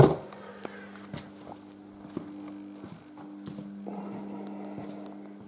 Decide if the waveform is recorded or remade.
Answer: recorded